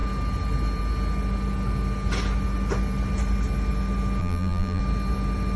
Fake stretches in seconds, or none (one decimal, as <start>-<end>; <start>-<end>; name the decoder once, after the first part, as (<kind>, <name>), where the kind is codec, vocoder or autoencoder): 4.2-4.8 (vocoder, BigVGAN v2)